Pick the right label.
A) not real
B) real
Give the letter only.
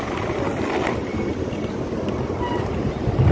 B